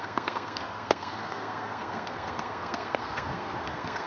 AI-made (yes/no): yes